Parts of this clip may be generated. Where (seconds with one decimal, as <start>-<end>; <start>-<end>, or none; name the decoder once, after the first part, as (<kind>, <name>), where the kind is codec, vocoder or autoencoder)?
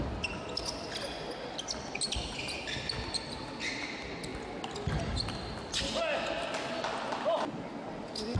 none